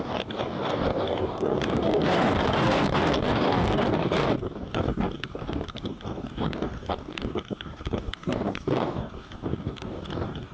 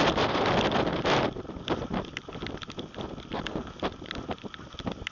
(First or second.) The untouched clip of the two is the second